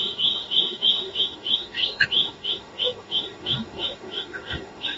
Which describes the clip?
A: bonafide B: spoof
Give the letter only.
B